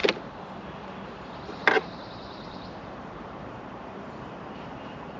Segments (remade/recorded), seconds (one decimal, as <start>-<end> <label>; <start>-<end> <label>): 0.0-0.9 recorded; 0.9-5.2 remade